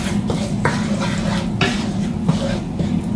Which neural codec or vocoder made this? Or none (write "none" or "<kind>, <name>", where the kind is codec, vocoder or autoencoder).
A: none